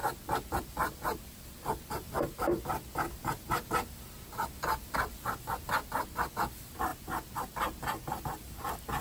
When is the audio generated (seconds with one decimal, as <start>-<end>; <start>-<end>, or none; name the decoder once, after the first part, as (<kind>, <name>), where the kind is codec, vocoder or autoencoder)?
none

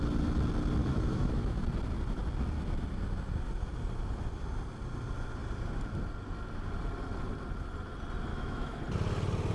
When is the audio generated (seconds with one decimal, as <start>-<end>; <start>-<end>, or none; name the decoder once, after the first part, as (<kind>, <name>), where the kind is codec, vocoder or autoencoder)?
0.8-1.6 (autoencoder, DAC-VAE); 8.3-8.8